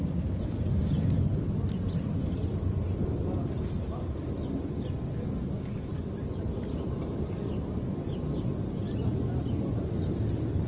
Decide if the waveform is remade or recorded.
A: recorded